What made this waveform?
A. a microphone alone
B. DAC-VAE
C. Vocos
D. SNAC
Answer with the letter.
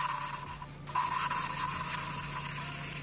A